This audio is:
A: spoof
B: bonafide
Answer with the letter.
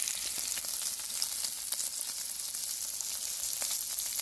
B